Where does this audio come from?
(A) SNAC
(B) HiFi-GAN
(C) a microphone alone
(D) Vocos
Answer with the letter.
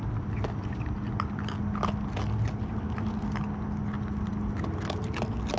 C